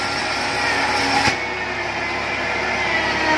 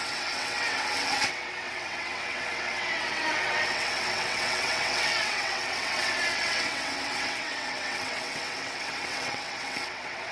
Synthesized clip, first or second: second